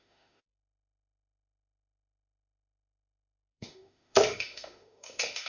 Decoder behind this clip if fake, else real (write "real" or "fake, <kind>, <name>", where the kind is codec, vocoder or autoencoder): fake, autoencoder, DAC-VAE